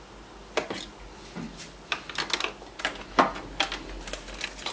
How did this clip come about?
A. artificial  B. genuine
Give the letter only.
B